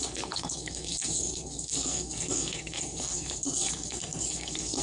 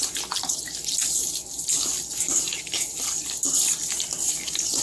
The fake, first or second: first